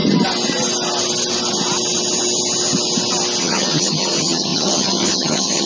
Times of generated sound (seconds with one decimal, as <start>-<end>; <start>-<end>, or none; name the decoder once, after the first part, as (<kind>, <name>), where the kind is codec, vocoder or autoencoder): 3.4-5.7 (vocoder, HiFi-GAN)